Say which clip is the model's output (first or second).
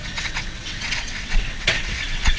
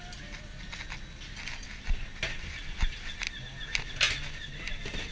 first